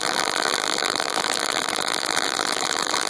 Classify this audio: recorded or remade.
remade